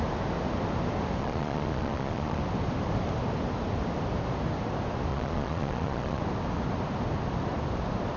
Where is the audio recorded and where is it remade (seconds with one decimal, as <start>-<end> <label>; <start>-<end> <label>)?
0.0-1.2 recorded; 1.2-2.4 remade; 2.4-5.1 recorded; 5.1-6.2 remade; 6.2-8.2 recorded